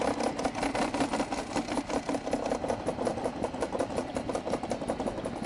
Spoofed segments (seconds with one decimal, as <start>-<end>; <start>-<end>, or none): 3.1-3.8